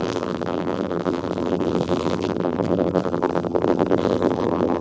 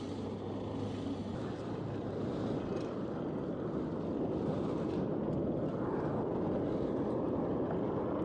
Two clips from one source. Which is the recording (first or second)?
second